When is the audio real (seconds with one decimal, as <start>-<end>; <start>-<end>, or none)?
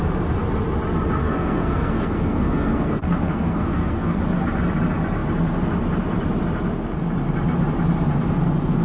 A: 0.0-1.2; 4.2-8.8